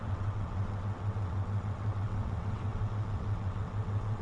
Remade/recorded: remade